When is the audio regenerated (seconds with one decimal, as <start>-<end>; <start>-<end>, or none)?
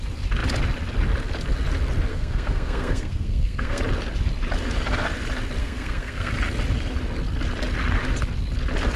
2.1-3.8; 5.6-6.3